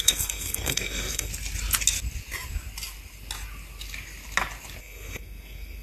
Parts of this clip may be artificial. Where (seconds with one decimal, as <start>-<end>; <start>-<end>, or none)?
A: 0.0-1.3; 4.8-5.8